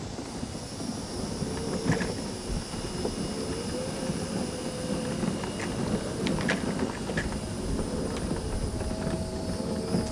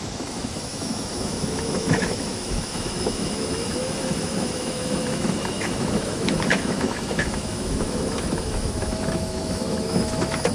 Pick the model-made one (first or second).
second